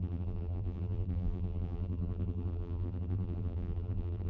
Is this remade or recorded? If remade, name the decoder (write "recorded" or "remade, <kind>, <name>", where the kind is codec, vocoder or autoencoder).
remade, vocoder, BigVGAN v2